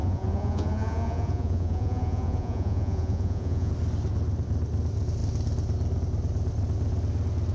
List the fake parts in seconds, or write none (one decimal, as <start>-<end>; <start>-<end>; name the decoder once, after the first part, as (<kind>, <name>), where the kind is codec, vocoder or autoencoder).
0.0-3.7 (vocoder, Vocos)